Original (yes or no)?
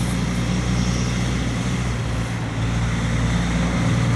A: yes